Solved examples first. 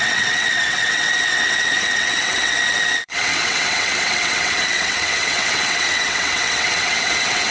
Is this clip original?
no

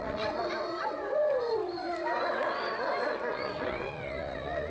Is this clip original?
no